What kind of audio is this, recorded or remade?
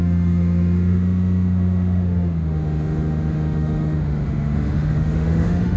remade